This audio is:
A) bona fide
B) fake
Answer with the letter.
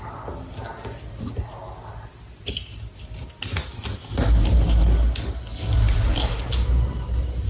A